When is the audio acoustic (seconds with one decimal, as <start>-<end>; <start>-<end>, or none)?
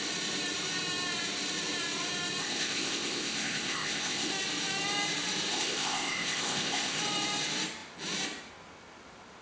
0.0-2.4; 4.3-5.5; 7.0-9.4